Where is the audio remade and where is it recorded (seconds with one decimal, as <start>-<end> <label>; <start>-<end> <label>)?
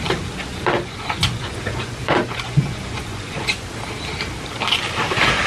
0.0-0.5 recorded; 0.5-3.7 remade; 3.7-5.5 recorded